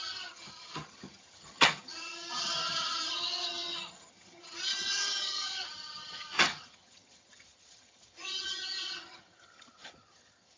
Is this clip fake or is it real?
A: fake